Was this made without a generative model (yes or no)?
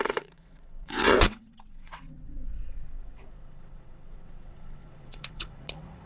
no